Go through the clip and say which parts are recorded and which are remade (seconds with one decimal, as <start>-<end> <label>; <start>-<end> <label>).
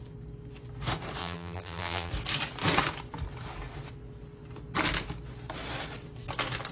0.0-1.2 recorded; 1.2-2.1 remade; 2.1-6.7 recorded